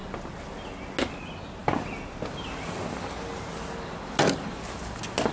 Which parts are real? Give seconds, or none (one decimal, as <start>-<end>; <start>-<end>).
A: 0.0-5.3